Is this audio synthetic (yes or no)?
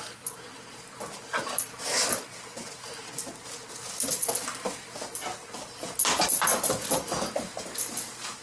no